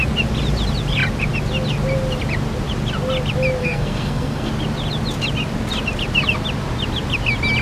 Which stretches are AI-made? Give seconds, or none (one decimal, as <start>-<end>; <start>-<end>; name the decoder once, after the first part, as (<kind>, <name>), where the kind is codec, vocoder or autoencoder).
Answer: 3.6-4.5 (codec, SNAC)